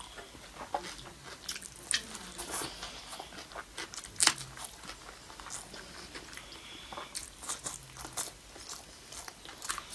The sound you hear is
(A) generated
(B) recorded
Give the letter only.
B